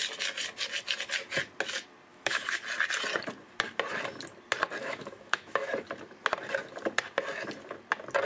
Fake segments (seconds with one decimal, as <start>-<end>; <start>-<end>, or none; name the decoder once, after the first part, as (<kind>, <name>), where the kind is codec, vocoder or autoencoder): 2.1-2.6 (autoencoder, DAC-VAE); 4.8-5.7